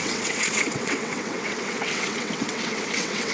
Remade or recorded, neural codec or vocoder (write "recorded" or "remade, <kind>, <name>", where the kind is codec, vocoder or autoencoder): remade, vocoder, WaveNeXt